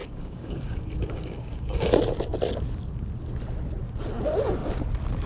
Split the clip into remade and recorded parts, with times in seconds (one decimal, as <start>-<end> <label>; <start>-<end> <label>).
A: 0.0-1.9 remade; 1.9-5.3 recorded